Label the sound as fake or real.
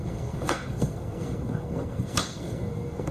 fake